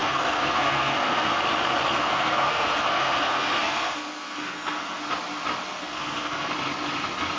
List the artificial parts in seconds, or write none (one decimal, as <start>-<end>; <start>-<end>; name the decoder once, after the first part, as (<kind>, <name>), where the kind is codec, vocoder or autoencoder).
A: 0.0-1.4 (codec, SNAC); 2.0-5.0; 5.8-6.5